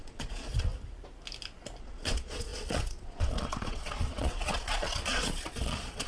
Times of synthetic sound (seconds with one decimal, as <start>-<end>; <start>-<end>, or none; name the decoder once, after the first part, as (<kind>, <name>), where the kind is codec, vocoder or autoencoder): 0.0-0.7 (vocoder, Vocos); 1.8-6.1